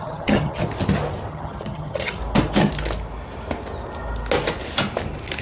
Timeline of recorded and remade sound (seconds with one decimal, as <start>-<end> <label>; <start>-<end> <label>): 0.0-0.6 remade; 0.6-1.3 recorded; 1.3-2.2 remade; 2.2-5.4 recorded